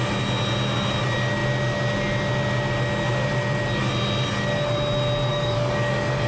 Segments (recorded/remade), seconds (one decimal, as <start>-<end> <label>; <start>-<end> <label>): 0.0-5.3 recorded; 5.3-6.3 remade